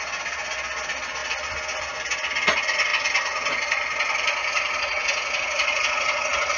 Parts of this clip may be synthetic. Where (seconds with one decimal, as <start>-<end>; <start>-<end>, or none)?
4.4-6.6